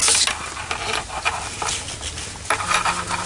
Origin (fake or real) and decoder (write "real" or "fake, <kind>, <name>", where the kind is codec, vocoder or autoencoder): real